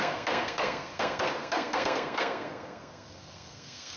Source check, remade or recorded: remade